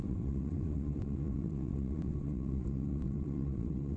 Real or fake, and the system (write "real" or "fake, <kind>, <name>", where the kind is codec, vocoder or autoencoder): fake, vocoder, WaveNeXt